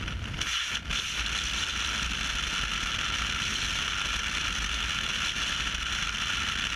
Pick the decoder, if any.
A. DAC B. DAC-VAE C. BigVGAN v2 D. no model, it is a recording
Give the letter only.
D